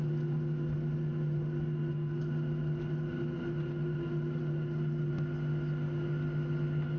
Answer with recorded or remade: recorded